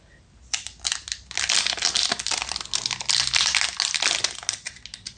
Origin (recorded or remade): recorded